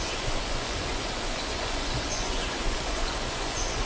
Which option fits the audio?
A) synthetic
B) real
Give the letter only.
A